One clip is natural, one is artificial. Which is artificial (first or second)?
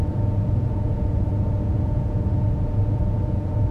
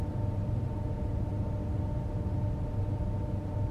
first